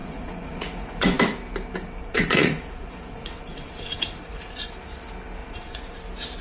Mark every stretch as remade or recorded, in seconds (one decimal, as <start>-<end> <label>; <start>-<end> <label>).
0.0-1.2 remade; 1.2-2.0 recorded; 2.0-4.7 remade; 4.7-5.4 recorded; 5.4-6.0 remade; 6.0-6.4 recorded